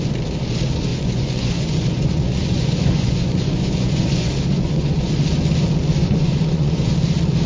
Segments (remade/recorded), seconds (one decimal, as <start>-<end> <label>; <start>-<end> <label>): 0.0-0.9 recorded; 0.9-5.1 remade; 5.1-6.0 recorded; 6.0-6.9 remade; 6.9-7.5 recorded